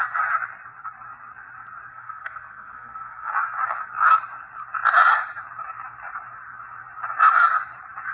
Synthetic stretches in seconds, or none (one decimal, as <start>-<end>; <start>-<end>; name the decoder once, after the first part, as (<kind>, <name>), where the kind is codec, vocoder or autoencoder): 1.9-3.3 (codec, SNAC)

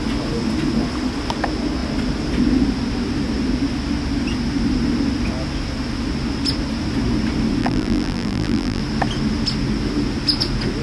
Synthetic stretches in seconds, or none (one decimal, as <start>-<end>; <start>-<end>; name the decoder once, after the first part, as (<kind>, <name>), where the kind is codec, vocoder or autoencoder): 7.6-8.8 (vocoder, BigVGAN v2)

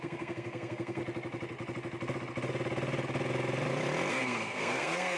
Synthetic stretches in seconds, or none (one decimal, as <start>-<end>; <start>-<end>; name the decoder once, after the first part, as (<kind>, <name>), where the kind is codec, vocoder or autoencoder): 0.0-1.0 (codec, SNAC); 4.1-5.2